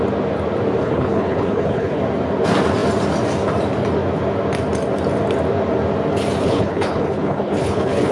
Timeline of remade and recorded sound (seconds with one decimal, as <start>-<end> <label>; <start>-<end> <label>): 0.0-0.8 recorded; 0.8-2.0 remade; 2.0-6.4 recorded; 6.4-8.1 remade